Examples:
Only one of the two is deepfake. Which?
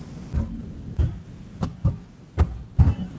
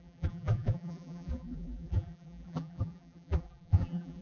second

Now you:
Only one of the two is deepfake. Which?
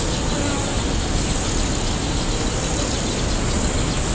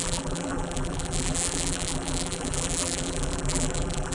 second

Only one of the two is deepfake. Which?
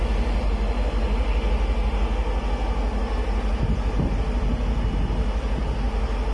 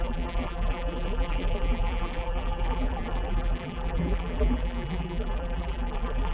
second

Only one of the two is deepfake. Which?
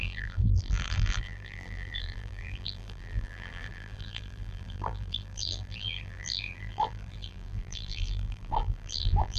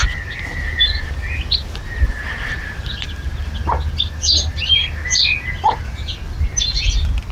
first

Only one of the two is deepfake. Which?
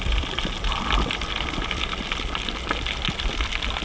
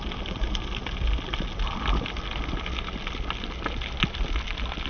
first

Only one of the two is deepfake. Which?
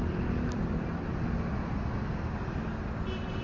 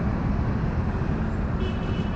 second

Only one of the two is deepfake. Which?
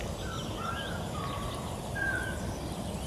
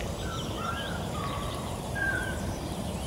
second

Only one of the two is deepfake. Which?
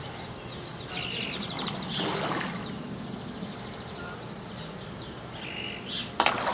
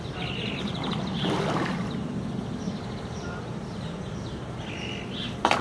second